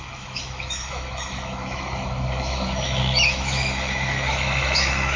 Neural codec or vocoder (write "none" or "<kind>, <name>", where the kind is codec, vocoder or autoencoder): autoencoder, DAC-VAE